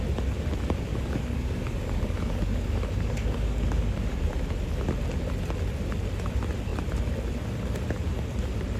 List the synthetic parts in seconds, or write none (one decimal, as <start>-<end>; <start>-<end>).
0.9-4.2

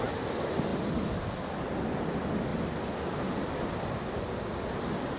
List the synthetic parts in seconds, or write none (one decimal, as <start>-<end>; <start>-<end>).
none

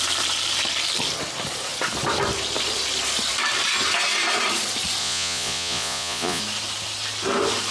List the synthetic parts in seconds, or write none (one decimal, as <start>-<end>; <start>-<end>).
5.0-6.4

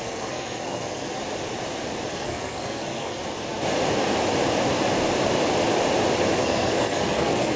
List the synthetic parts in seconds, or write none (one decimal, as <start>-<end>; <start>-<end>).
0.0-1.2; 2.1-3.2; 6.4-7.6

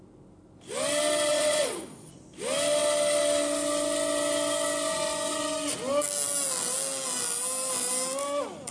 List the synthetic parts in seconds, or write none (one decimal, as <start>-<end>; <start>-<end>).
1.3-2.1

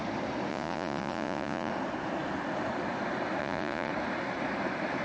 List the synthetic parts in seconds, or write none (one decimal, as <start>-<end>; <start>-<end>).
0.5-1.7; 3.4-3.9